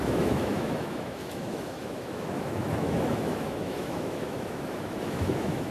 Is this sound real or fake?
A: fake